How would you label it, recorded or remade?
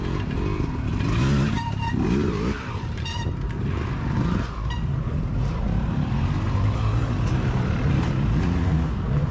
recorded